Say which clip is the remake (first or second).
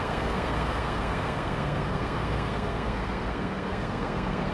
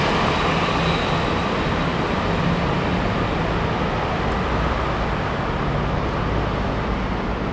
first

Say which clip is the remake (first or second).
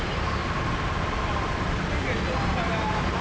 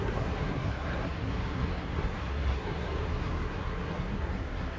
second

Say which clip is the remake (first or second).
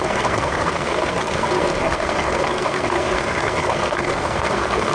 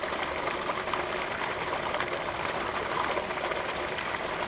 first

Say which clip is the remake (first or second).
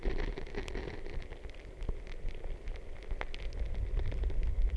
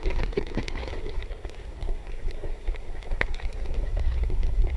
second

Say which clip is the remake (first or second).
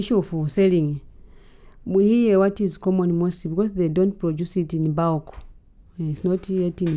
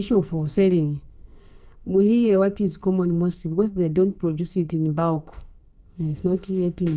second